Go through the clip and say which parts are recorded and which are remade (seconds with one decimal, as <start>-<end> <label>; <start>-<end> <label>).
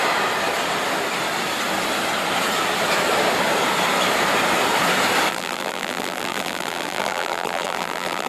0.0-5.3 recorded; 5.3-8.3 remade